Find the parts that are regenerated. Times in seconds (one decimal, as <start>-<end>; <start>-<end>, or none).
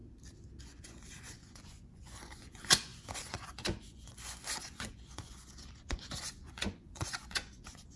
0.6-8.0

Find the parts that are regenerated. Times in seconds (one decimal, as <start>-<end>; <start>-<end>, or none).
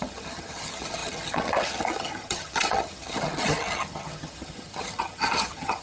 0.0-5.8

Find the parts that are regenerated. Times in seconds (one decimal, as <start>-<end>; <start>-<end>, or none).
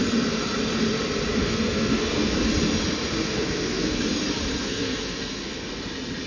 1.4-2.3; 3.1-4.0; 4.5-5.7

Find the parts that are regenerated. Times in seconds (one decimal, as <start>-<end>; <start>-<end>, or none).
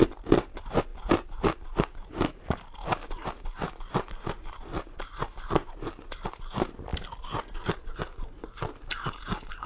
none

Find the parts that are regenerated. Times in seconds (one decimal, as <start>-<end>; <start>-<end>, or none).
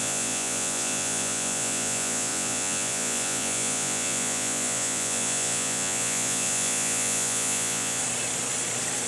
0.0-8.0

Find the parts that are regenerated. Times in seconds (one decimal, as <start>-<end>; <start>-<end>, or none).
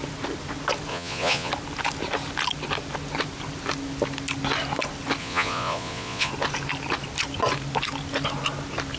0.9-1.5; 5.2-6.3